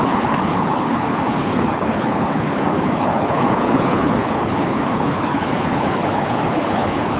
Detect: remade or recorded remade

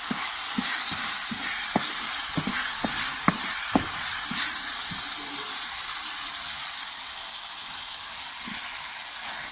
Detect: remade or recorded recorded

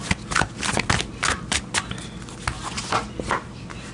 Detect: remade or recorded recorded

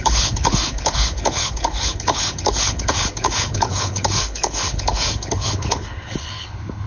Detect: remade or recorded remade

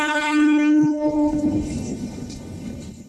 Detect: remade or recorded remade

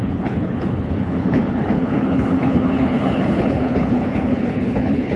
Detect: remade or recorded remade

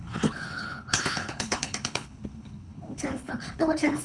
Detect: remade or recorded remade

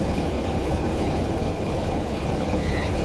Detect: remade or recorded remade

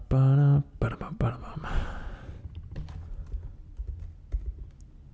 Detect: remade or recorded recorded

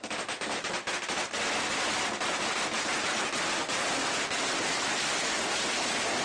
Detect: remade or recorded recorded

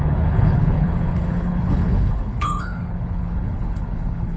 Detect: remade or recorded remade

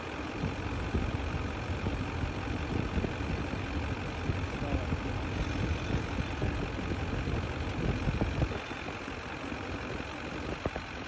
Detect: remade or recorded recorded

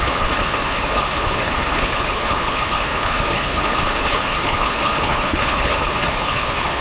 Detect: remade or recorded remade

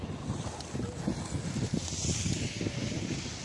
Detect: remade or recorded recorded